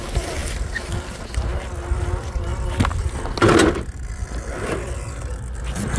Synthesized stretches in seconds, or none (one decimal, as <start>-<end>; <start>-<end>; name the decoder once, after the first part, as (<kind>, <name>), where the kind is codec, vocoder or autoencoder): none

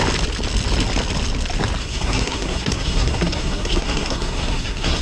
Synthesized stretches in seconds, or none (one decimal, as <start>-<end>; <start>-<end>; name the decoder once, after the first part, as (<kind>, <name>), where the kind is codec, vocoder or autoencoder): 1.8-5.0 (codec, SNAC)